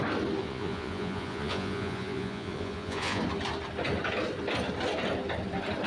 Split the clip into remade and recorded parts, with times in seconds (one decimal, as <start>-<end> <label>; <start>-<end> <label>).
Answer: 0.0-0.4 recorded; 0.4-3.2 remade; 3.2-5.9 recorded